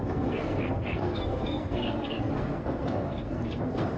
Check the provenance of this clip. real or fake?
fake